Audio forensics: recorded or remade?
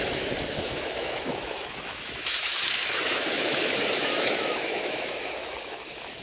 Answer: remade